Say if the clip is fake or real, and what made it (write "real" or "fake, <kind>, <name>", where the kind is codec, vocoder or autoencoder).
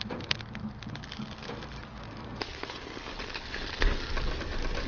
real